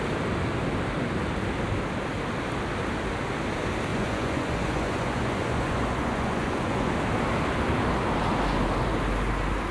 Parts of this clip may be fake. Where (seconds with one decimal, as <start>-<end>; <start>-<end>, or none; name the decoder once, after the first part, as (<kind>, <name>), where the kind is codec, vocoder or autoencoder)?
3.9-6.9 (vocoder, Vocos)